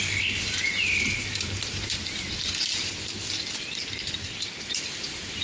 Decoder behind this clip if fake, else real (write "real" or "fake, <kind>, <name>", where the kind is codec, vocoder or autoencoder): fake, vocoder, BigVGAN v2